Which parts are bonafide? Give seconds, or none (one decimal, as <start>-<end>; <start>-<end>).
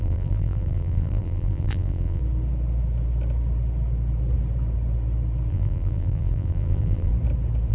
2.2-5.5; 7.1-7.7